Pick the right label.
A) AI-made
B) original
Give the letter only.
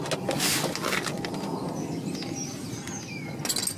B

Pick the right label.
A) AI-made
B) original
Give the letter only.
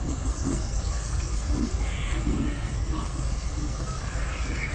A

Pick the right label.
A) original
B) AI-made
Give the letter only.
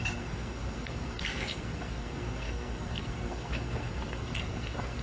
B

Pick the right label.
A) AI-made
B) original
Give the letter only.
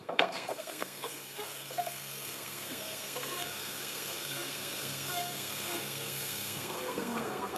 A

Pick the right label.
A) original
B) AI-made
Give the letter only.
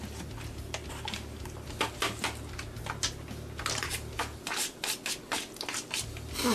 A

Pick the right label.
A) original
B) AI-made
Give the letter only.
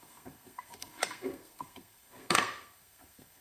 B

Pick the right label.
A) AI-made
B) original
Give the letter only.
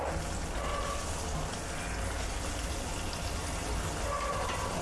B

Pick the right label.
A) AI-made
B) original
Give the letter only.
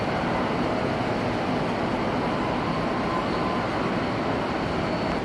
B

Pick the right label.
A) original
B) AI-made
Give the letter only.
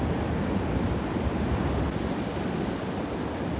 A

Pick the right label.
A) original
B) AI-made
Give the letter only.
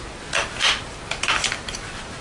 A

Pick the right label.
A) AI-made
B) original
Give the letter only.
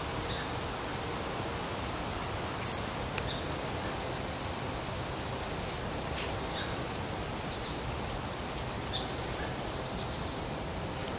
B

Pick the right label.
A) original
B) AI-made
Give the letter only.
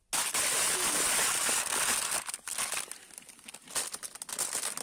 A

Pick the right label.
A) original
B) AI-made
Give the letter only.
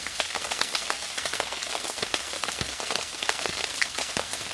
B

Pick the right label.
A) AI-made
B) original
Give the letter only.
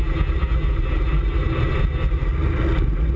B